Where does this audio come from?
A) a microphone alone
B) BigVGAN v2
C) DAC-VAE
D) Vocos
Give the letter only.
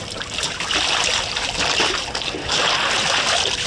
A